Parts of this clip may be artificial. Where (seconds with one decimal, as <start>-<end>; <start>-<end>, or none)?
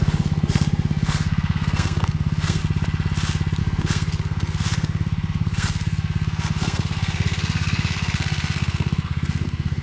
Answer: 0.0-2.6; 3.6-9.8